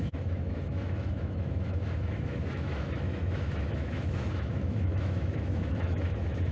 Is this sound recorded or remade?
remade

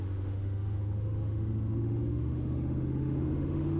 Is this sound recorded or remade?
remade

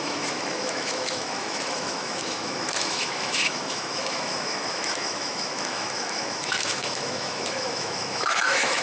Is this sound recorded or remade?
remade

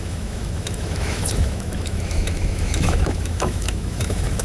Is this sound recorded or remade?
remade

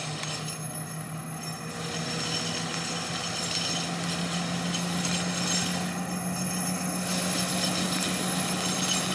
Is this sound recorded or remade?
recorded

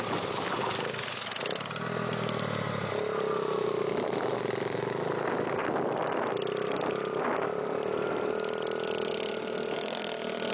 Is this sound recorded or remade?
recorded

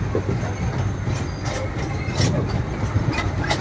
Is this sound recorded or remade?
recorded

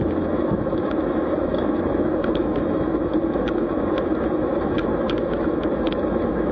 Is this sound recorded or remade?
remade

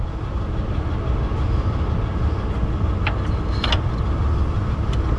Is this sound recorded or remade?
recorded